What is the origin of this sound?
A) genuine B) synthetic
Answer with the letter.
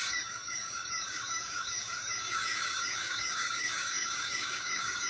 B